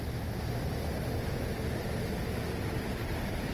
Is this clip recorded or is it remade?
recorded